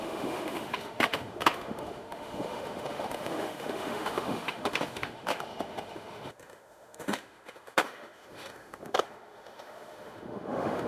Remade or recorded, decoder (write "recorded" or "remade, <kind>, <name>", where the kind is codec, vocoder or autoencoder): remade, autoencoder, DAC-VAE